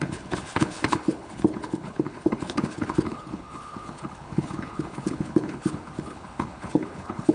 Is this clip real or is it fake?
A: fake